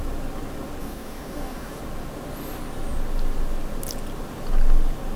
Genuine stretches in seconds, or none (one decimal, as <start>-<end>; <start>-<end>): 0.0-0.8; 1.8-5.2

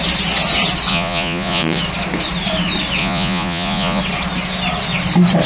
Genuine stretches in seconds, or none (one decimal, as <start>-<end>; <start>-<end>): 0.0-0.9; 1.8-3.0; 4.0-5.5

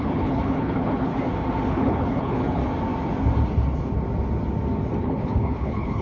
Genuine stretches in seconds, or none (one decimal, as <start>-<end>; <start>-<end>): 1.1-1.7; 2.6-5.0

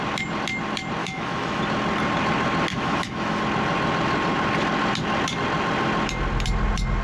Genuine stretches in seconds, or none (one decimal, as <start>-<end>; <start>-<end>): 0.0-1.0; 1.6-2.7; 3.4-7.0

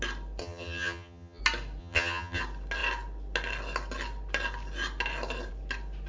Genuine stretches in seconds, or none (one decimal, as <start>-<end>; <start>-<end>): 0.0-0.4; 1.4-1.8; 2.4-6.1

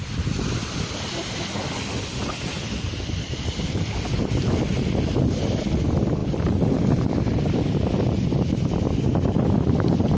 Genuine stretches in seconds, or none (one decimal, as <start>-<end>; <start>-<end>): 0.0-6.2; 6.7-10.2